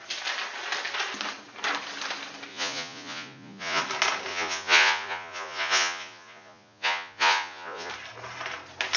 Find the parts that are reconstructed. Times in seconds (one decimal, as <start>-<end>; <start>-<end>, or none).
2.5-3.8; 4.3-7.9